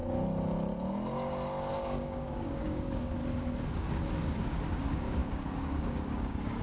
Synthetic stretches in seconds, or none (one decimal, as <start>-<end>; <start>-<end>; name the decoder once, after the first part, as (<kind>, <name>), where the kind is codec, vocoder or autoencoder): 1.7-3.2 (codec, DAC); 4.4-6.6